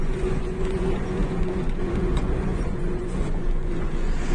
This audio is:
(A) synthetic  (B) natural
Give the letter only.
A